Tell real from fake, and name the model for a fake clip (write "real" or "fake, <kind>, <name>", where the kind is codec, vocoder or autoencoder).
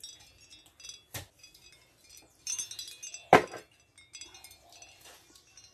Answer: real